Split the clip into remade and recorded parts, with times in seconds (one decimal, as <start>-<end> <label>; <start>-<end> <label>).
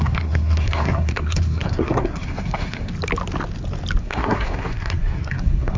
0.0-2.9 remade; 2.9-4.0 recorded; 4.0-5.8 remade